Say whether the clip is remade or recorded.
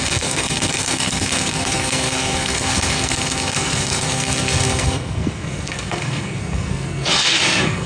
remade